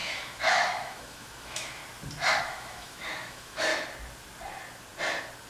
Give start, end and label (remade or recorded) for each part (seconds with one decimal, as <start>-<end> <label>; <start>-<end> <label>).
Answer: 0.0-1.8 remade; 1.8-2.4 recorded; 2.4-3.7 remade; 3.7-5.5 recorded